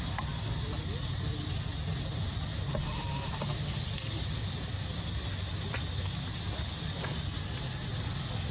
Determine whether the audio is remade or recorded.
recorded